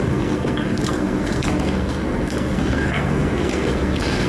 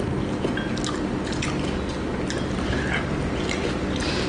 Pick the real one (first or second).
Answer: second